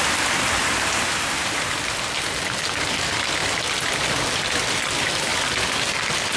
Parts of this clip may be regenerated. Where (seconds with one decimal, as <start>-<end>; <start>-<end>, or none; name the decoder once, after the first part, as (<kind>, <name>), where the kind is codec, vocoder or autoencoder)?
none